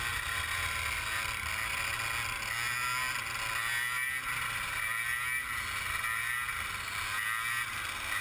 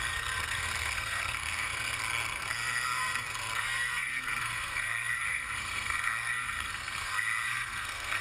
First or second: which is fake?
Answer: second